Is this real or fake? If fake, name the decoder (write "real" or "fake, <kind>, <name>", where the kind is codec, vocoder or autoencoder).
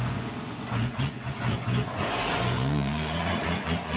fake, vocoder, Vocos